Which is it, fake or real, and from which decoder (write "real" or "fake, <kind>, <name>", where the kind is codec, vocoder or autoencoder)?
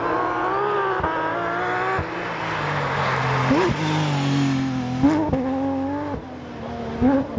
real